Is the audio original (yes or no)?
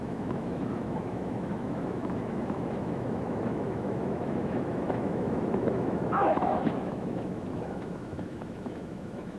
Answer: no